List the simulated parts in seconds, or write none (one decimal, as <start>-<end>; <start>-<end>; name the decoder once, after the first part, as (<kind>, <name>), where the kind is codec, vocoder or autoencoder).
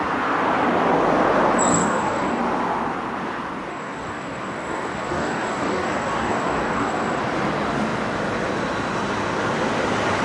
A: 1.7-2.4 (codec, DAC); 3.7-7.2